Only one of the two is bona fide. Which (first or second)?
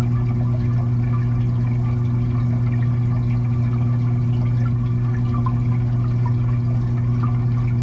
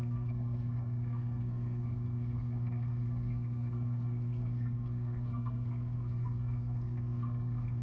first